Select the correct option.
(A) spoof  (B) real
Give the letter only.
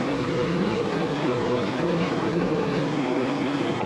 A